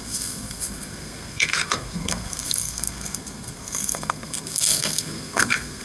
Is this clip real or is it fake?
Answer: fake